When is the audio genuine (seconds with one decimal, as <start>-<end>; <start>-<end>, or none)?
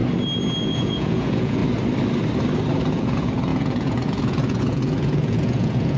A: 0.0-0.6; 1.6-2.9